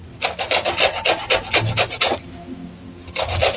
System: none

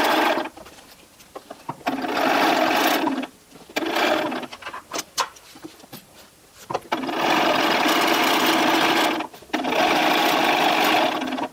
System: vocoder, BigVGAN v2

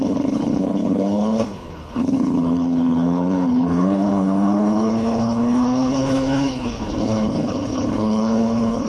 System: codec, HILCodec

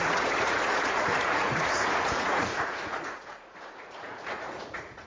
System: vocoder, Vocos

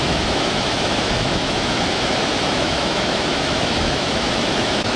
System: autoencoder, DAC-VAE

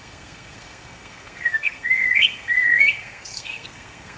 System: codec, SNAC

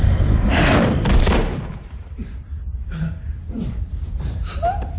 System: vocoder, BigVGAN v2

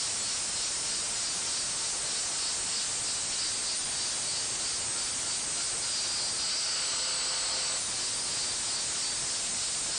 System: none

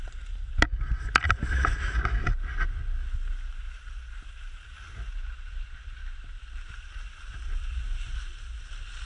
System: none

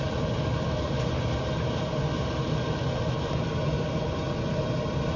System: none